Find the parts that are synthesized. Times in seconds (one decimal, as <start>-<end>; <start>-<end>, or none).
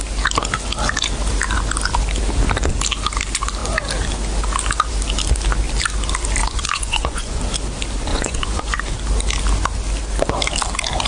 6.4-7.4; 8.1-8.8